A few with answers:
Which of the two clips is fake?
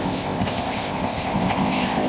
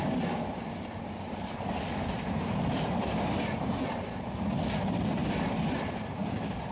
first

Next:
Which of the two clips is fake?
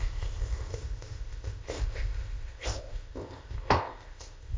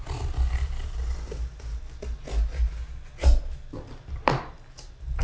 first